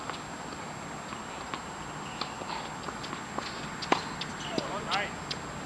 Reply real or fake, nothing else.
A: real